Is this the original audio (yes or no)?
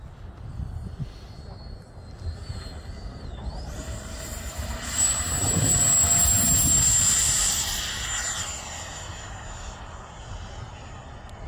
yes